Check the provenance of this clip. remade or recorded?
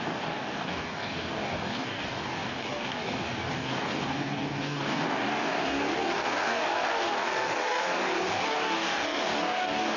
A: remade